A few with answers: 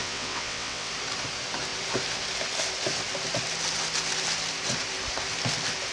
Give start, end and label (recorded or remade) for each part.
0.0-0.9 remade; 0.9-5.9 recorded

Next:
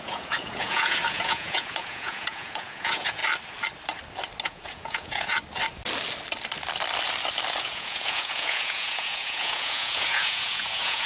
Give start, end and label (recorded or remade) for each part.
0.0-3.2 remade; 3.2-4.4 recorded; 4.4-5.3 remade; 5.3-7.6 recorded; 7.6-11.1 remade

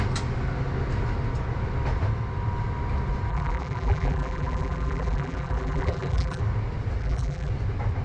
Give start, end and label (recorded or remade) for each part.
0.0-3.3 recorded; 3.3-6.4 remade; 6.4-7.0 recorded; 7.0-7.5 remade; 7.5-8.0 recorded

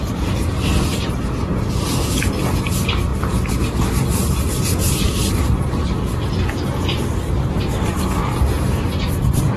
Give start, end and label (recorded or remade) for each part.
0.0-9.6 recorded

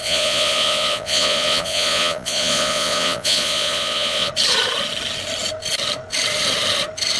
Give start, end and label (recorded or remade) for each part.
0.0-4.3 remade; 4.3-7.2 recorded

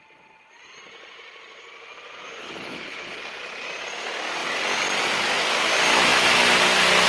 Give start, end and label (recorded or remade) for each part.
0.0-2.4 recorded; 2.4-3.2 remade; 3.2-7.1 recorded

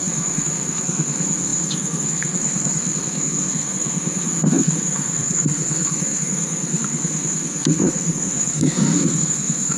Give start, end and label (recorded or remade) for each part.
0.0-9.8 remade